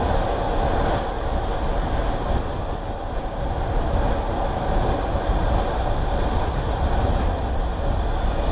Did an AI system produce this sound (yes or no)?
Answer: no